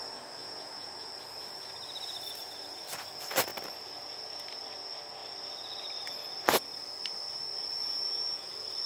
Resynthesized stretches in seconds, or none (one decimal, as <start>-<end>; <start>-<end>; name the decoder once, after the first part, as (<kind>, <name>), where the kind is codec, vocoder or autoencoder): 0.4-1.1 (vocoder, Vocos); 7.8-8.5

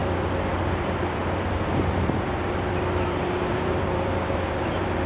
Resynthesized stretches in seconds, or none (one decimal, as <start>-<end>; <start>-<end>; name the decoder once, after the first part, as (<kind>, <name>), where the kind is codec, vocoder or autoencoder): 0.0-5.1 (vocoder, BigVGAN v2)

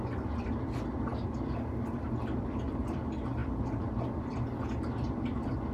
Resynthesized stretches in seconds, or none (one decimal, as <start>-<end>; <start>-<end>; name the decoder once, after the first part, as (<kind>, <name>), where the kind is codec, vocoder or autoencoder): none

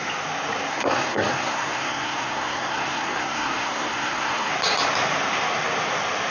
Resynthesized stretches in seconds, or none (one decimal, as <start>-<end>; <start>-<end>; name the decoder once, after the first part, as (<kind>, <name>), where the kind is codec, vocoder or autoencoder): 0.7-4.5 (codec, SNAC)

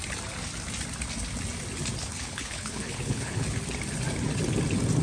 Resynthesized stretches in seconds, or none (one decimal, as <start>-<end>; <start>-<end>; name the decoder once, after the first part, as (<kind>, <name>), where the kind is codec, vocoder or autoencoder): 2.0-3.6 (codec, HILCodec)

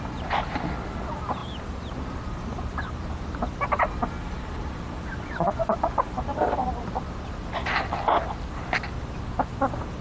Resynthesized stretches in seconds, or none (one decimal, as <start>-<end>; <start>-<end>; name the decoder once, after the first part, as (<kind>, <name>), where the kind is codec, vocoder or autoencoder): 4.2-5.5 (vocoder, BigVGAN v2); 6.3-6.9